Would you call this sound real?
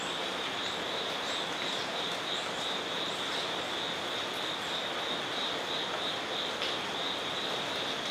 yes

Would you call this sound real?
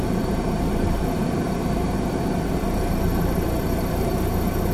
no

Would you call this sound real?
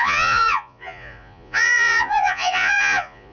no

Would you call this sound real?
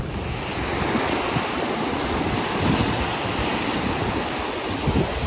yes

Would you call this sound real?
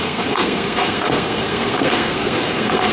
no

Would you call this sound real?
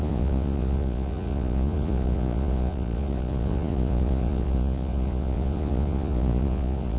no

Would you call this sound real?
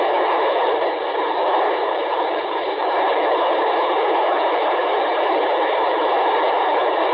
no